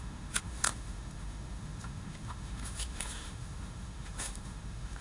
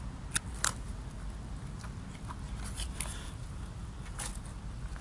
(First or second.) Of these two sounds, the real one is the second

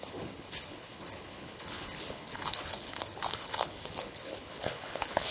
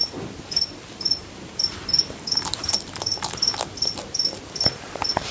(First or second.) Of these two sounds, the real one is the second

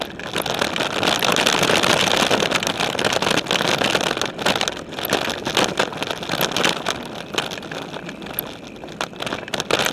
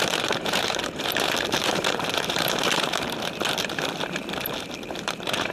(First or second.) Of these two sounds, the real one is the first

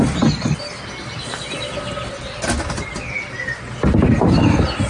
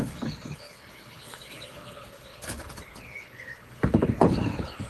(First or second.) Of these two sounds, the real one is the first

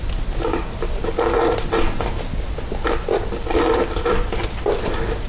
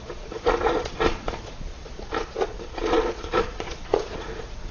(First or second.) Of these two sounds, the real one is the first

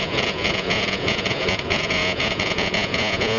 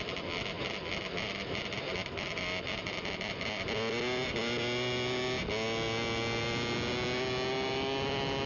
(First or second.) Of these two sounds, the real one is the second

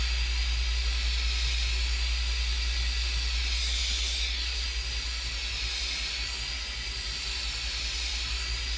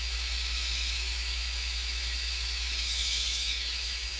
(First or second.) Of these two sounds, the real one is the first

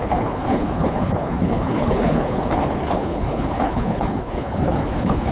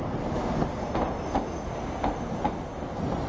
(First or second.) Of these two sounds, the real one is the second